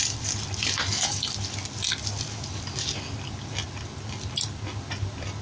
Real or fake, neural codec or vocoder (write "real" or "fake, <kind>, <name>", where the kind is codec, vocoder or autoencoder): real